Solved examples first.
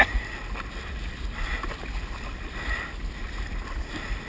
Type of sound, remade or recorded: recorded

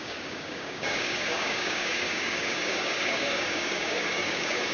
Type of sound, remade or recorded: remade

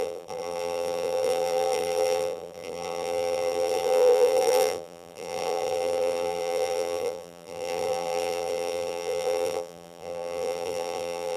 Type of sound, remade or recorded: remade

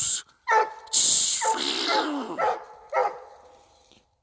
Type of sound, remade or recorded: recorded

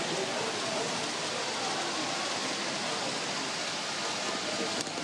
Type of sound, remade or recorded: recorded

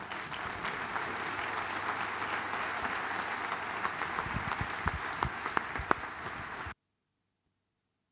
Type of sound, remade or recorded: recorded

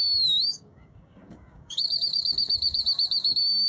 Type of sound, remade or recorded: remade